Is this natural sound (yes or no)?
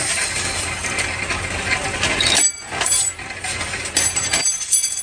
yes